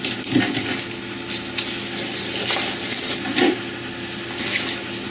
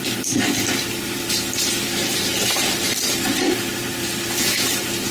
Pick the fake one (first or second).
second